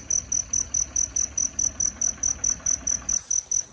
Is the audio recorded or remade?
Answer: recorded